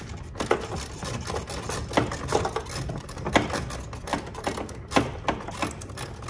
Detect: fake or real real